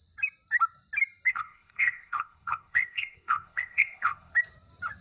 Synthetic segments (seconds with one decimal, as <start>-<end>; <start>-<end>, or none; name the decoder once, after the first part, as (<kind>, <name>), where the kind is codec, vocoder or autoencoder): 1.3-4.3 (codec, ZipCodec)